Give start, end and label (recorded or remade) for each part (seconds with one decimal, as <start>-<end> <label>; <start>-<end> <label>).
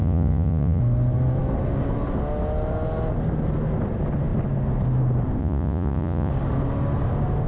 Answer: 0.0-0.8 remade; 0.8-5.4 recorded; 5.4-6.3 remade; 6.3-7.5 recorded